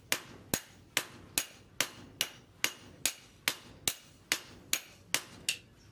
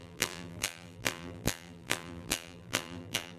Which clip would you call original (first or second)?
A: first